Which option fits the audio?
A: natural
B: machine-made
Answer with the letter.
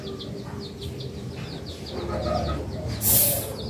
A